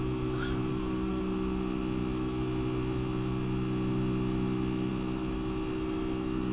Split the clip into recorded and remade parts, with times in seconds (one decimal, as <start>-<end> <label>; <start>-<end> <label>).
0.0-0.7 recorded; 0.7-1.2 remade; 1.2-6.5 recorded

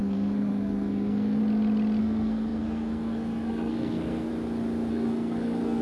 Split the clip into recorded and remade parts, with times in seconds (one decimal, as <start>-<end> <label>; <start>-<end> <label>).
0.0-1.4 remade; 1.4-2.0 recorded; 2.0-4.3 remade; 4.3-4.9 recorded; 4.9-5.8 remade